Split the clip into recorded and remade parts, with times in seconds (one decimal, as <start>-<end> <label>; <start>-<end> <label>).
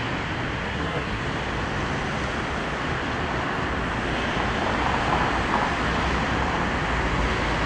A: 0.0-0.7 recorded; 0.7-1.2 remade; 1.2-7.7 recorded